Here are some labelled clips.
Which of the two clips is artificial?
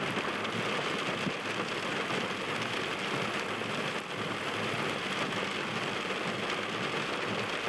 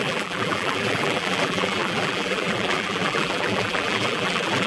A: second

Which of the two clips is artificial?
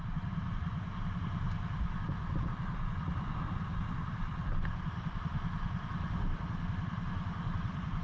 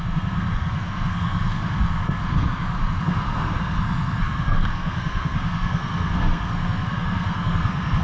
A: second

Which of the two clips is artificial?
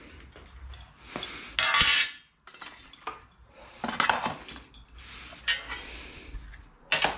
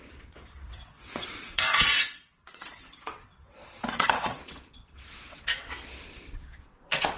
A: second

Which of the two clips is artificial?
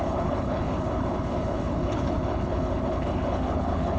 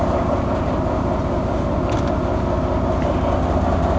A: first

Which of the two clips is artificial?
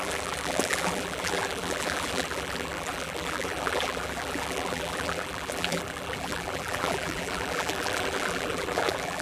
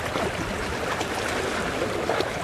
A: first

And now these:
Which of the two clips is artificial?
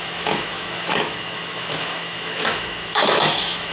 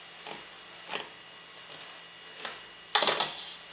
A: first